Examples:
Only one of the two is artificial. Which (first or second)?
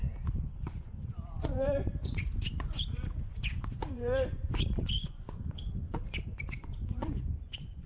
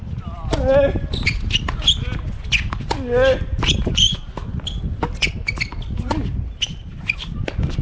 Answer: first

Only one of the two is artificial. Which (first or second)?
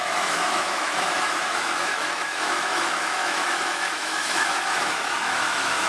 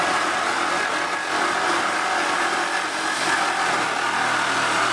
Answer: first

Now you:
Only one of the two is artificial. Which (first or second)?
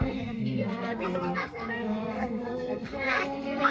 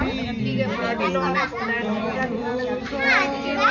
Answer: first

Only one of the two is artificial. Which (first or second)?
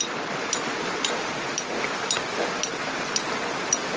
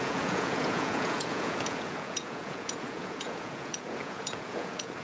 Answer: second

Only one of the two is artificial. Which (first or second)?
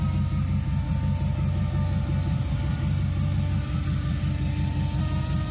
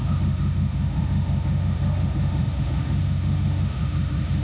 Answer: second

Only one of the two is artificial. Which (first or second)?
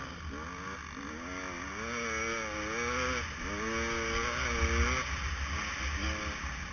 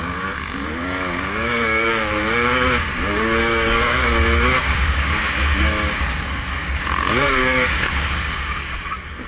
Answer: second